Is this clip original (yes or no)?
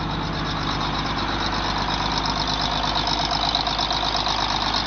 yes